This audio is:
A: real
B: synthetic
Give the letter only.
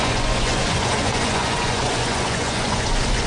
B